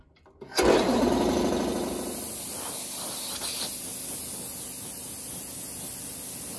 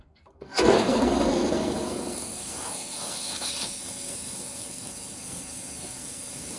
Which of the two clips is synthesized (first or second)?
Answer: second